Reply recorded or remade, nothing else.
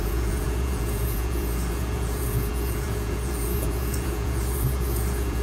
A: remade